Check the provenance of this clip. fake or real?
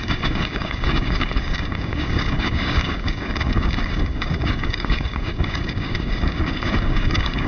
fake